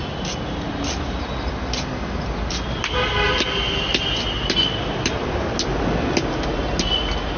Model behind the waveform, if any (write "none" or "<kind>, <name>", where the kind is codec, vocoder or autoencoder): none